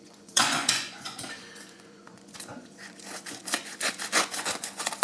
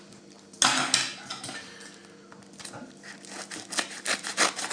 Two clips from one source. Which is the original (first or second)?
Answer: second